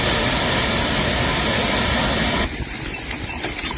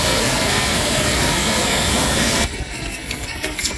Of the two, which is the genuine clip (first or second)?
first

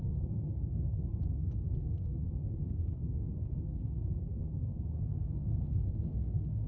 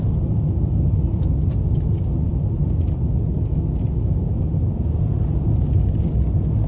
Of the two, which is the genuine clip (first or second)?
second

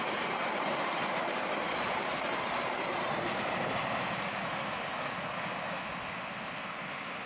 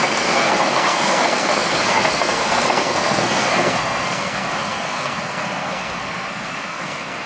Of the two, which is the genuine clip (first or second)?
first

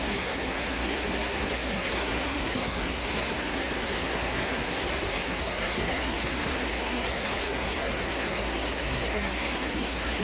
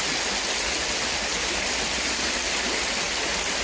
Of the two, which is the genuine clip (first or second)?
second